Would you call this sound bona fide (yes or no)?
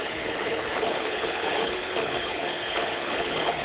no